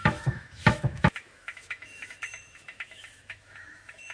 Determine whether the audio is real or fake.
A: fake